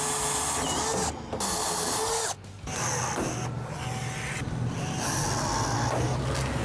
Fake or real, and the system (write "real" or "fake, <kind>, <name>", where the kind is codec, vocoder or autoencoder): real